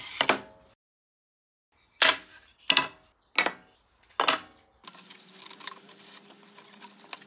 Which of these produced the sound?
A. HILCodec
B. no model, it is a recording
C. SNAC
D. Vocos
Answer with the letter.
B